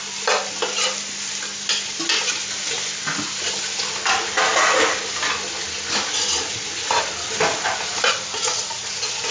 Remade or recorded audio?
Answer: recorded